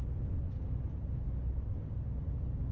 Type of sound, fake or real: real